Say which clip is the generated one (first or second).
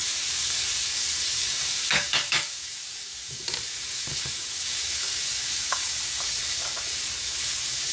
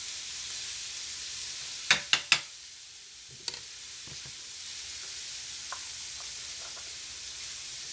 first